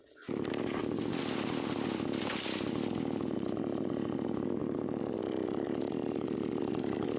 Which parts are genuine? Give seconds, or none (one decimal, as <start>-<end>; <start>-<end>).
0.0-7.2